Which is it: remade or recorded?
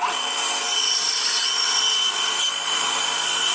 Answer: recorded